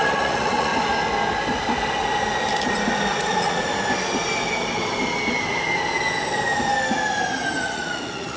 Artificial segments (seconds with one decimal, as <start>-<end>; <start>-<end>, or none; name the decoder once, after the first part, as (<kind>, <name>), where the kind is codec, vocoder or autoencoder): 0.0-0.7 (vocoder, Vocos); 3.2-3.7; 7.6-8.4